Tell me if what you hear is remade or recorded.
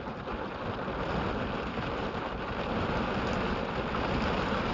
recorded